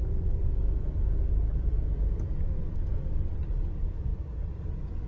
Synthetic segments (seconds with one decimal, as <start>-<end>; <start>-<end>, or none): 0.0-2.3; 3.4-4.1; 4.6-5.1